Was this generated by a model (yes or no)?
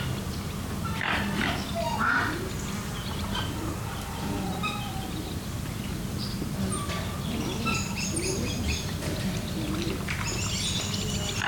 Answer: no